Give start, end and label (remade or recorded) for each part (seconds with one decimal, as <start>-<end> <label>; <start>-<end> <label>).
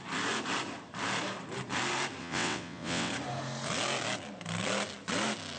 0.0-2.2 recorded; 2.2-3.1 remade; 3.1-5.6 recorded